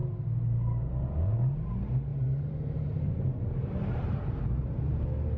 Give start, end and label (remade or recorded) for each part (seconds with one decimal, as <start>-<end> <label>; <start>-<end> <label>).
0.0-2.1 recorded; 2.1-4.3 remade; 4.3-5.4 recorded